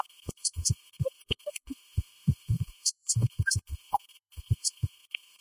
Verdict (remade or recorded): remade